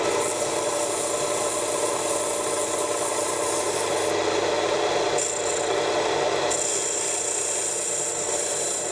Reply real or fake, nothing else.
real